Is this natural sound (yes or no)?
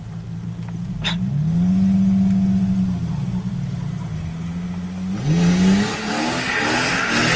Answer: yes